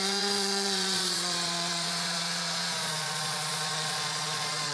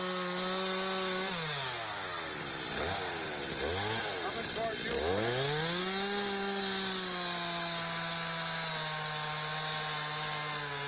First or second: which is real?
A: second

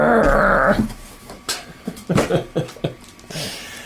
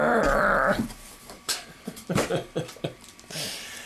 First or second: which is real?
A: first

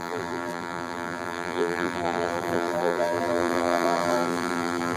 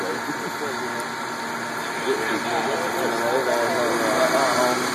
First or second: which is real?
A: second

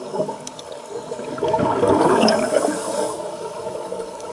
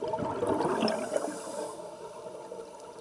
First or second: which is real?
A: second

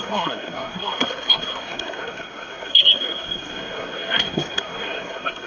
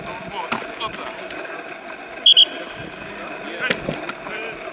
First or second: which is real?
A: second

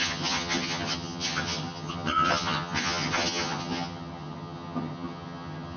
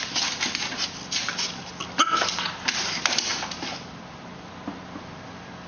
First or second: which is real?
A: second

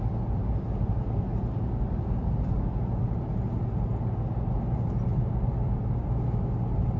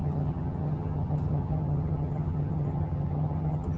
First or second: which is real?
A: first